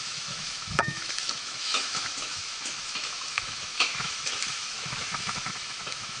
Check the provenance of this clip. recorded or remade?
remade